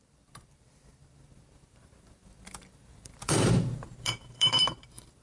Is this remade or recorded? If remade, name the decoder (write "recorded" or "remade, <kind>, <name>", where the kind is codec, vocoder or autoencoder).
remade, vocoder, BigVGAN v2